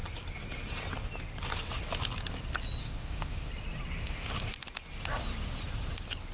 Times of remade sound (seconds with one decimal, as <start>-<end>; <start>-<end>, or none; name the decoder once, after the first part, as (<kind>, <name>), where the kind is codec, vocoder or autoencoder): 2.8-3.5 (autoencoder, DAC-VAE); 4.0-4.5